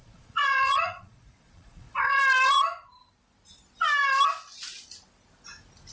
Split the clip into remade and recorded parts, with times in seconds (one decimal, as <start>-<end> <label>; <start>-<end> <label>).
0.0-2.2 remade; 2.2-5.9 recorded